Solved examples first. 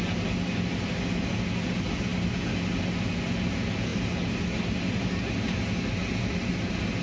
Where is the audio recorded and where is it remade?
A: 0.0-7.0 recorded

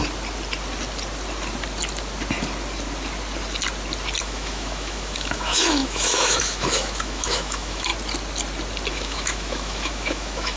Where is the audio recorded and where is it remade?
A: 0.0-4.2 recorded; 4.2-7.9 remade; 7.9-8.9 recorded; 8.9-10.6 remade

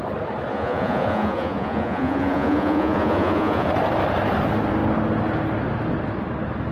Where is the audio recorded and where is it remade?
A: 0.0-0.5 recorded; 0.5-3.7 remade; 3.7-6.7 recorded

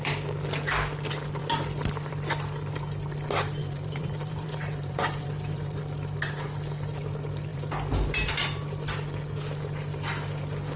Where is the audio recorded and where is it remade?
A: 0.0-3.6 recorded; 3.6-5.8 remade; 5.8-7.5 recorded; 7.5-8.3 remade; 8.3-10.8 recorded

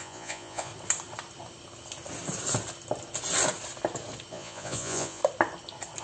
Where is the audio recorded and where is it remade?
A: 0.0-0.7 remade; 0.7-4.3 recorded; 4.3-5.2 remade; 5.2-6.0 recorded

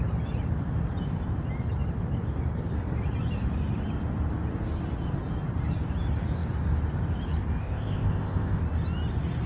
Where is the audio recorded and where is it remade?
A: 0.0-7.6 recorded; 7.6-8.6 remade; 8.6-9.5 recorded

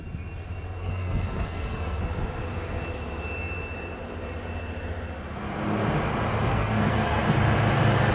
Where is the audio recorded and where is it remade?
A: 0.0-0.8 recorded; 0.8-2.0 remade; 2.0-6.5 recorded; 6.5-7.2 remade; 7.2-8.1 recorded

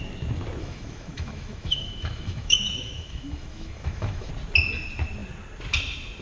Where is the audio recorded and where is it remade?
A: 0.0-0.6 recorded; 0.6-4.3 remade; 4.3-6.2 recorded